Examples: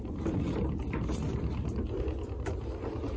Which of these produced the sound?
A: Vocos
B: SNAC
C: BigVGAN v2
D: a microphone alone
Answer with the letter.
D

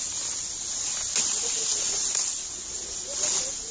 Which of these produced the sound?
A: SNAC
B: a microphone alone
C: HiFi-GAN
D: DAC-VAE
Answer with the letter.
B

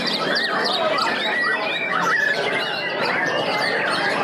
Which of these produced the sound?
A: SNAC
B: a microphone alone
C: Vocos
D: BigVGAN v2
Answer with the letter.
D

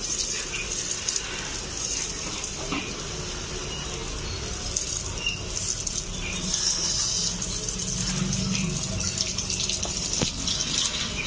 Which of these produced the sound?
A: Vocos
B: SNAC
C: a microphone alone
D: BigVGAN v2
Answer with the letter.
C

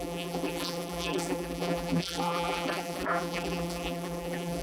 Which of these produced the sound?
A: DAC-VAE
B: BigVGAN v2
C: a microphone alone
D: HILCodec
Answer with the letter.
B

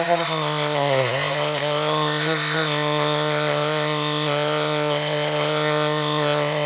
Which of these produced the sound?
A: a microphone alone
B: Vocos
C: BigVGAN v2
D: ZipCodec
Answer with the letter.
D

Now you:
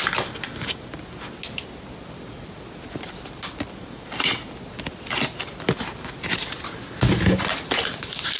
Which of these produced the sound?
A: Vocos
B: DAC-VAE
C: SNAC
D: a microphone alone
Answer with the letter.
D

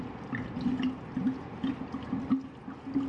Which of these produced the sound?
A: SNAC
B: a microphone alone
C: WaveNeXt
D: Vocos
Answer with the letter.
B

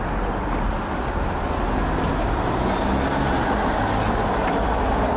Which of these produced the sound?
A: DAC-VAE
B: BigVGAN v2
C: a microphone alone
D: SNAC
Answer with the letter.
C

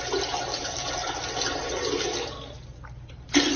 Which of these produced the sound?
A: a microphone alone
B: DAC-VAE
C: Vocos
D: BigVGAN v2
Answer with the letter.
A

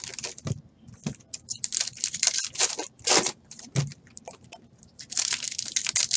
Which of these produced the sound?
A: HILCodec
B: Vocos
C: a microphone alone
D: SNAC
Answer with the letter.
C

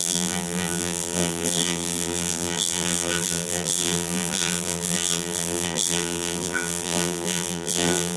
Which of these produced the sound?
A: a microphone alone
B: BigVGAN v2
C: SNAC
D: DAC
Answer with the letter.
B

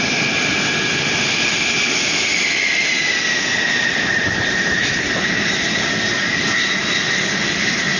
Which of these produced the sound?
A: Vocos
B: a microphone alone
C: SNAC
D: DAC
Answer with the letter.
B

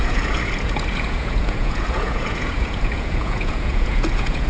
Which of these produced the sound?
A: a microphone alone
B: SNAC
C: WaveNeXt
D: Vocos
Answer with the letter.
D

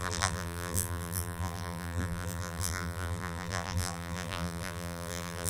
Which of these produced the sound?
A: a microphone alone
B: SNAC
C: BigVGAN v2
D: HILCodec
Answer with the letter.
C